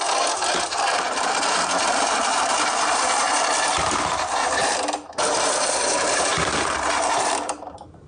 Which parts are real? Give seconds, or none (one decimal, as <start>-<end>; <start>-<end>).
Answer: none